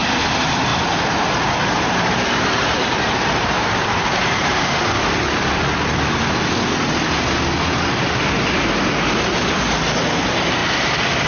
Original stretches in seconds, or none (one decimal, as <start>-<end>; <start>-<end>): 0.0-0.7; 4.6-11.3